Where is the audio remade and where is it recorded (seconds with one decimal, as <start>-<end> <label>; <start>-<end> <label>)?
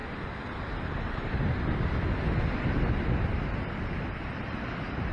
0.0-1.0 recorded; 1.0-1.5 remade; 1.5-3.5 recorded; 3.5-5.1 remade